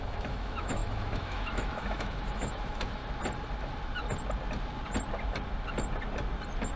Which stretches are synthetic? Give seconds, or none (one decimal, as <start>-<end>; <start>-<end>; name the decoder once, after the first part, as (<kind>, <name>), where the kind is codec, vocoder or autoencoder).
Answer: 0.0-3.0 (autoencoder, DAC-VAE)